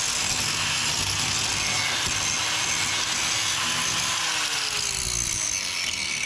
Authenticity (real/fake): real